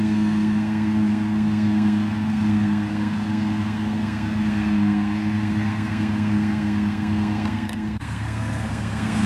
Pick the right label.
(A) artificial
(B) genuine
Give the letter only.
A